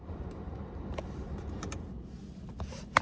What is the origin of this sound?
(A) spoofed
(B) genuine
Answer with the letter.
B